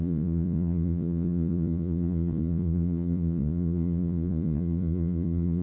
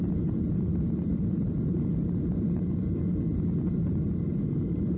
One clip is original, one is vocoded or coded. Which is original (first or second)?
second